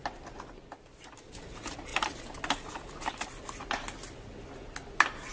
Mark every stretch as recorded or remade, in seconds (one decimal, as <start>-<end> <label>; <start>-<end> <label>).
0.0-1.4 recorded; 1.4-1.9 remade; 1.9-5.3 recorded